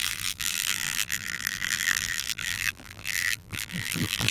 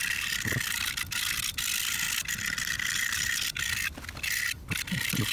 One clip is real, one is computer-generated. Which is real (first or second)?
second